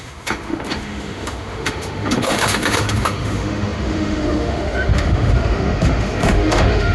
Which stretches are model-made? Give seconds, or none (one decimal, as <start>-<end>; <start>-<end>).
0.0-6.9